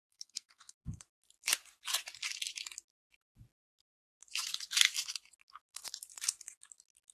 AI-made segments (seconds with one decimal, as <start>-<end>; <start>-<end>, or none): 0.0-1.0